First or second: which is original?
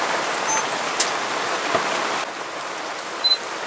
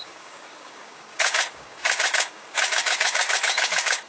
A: first